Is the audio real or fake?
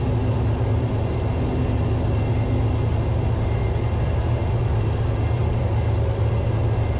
real